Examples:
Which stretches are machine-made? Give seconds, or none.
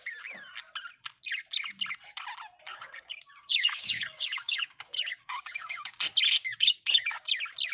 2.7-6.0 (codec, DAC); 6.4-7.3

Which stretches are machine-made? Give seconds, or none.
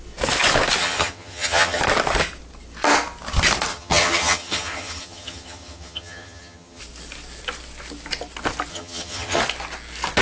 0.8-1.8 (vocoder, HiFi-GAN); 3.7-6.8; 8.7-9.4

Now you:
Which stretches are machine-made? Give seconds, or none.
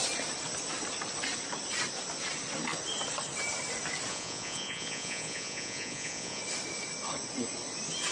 4.1-6.4 (vocoder, Vocos)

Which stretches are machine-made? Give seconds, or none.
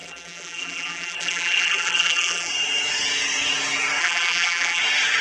0.0-2.5 (vocoder, BigVGAN v2); 4.0-4.8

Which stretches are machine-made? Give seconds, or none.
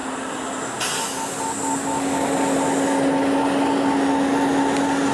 none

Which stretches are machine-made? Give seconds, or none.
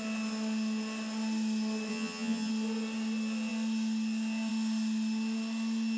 1.9-2.5 (vocoder, HiFi-GAN)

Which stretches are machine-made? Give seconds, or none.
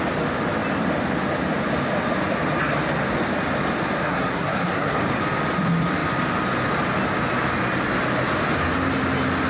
4.0-5.0 (codec, SNAC)